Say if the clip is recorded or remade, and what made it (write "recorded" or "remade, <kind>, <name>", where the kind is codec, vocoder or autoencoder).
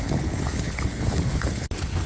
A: remade, codec, HILCodec